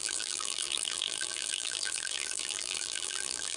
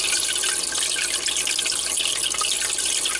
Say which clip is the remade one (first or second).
first